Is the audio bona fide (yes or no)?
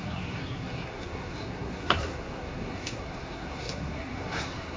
no